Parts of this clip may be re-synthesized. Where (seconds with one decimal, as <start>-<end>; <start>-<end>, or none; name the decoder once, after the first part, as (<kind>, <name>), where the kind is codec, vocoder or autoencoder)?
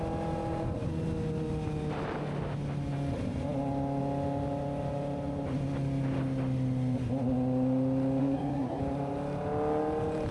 8.2-8.8 (codec, SNAC)